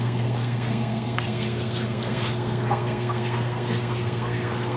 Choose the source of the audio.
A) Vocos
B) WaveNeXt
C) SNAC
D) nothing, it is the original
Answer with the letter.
C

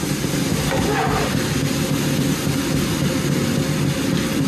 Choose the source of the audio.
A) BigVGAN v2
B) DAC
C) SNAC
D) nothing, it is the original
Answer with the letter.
D